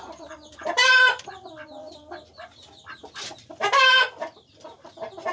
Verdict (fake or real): fake